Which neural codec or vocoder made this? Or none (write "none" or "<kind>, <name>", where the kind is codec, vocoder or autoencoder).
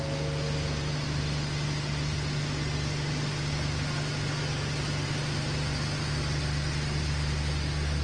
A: none